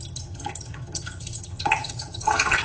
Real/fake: fake